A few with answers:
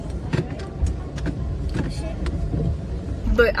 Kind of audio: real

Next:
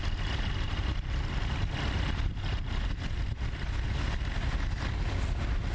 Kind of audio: real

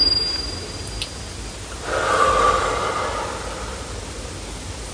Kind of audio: real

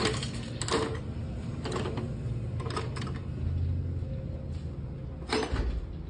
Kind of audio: real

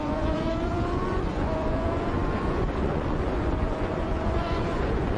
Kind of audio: fake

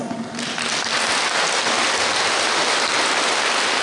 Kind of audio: real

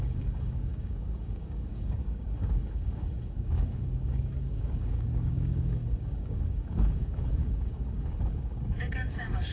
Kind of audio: fake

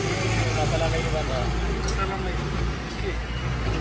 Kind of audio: real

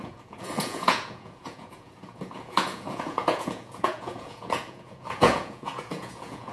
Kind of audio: fake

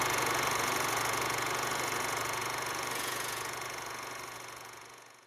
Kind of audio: fake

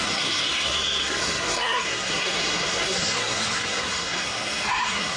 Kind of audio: fake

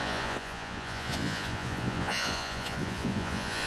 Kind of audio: fake